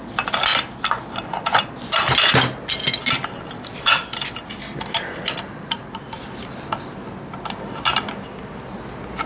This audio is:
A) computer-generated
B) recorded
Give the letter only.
B